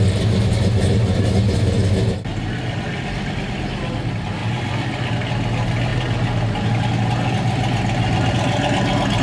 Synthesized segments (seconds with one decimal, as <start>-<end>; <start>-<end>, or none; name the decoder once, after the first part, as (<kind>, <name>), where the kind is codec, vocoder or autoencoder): none